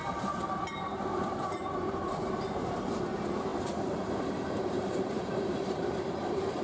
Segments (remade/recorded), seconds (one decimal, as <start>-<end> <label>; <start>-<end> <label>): 0.0-6.6 remade